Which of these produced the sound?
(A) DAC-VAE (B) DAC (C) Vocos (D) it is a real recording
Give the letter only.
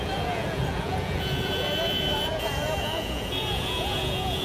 C